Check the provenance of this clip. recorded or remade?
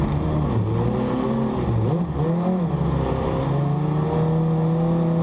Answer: recorded